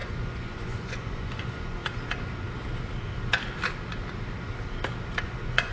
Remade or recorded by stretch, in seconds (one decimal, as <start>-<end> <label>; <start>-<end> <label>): 0.0-1.8 remade; 1.8-5.2 recorded; 5.2-5.7 remade